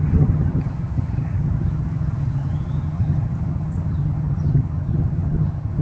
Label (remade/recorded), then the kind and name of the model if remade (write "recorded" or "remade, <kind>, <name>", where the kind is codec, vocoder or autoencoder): remade, vocoder, HiFi-GAN